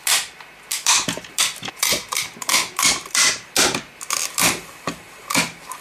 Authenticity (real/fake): real